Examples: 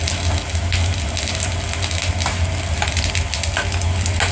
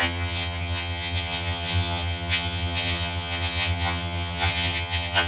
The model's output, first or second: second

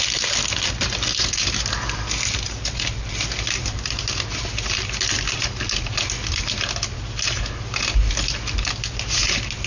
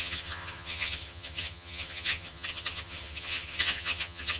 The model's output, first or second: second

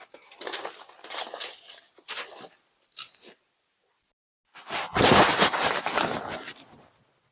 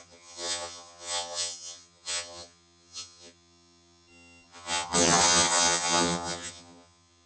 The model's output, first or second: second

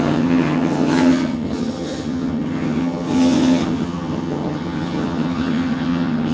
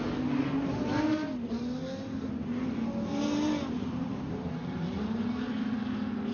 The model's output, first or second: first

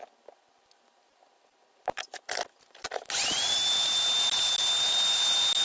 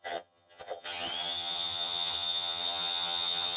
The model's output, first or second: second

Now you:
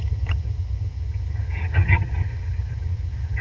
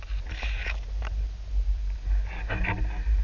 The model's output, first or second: first